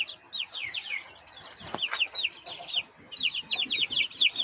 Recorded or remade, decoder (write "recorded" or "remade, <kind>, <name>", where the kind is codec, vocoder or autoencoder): recorded